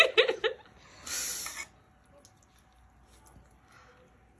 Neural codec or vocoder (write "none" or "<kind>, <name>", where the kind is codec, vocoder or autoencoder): none